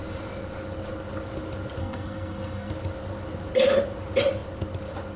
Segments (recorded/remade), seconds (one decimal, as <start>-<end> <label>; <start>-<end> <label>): 0.0-1.8 recorded; 1.8-2.7 remade; 2.7-5.2 recorded